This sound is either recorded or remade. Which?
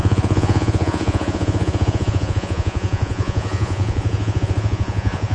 remade